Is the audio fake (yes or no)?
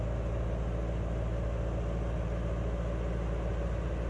no